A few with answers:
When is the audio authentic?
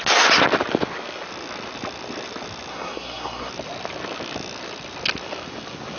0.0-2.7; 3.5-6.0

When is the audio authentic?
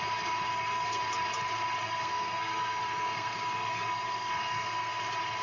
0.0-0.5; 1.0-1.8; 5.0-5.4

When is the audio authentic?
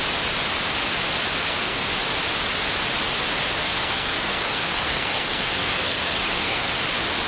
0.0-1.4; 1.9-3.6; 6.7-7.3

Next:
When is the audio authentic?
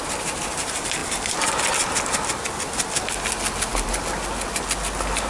0.0-5.3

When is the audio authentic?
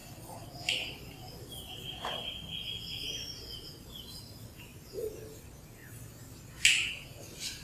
0.0-7.6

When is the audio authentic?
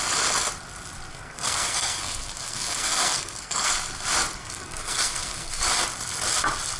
0.0-1.1; 3.7-4.4; 5.7-6.8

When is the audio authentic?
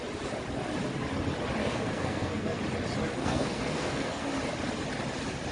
0.0-1.6; 2.6-3.2; 4.3-5.5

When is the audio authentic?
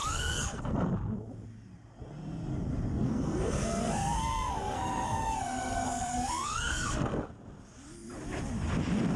0.9-2.9; 7.3-9.2